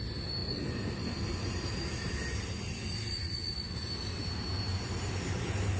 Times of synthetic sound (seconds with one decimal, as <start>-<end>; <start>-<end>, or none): 0.4-2.1; 4.7-5.8